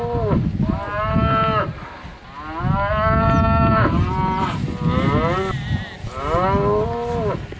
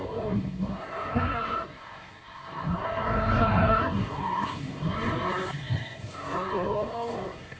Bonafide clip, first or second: first